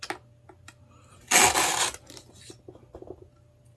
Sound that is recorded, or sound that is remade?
recorded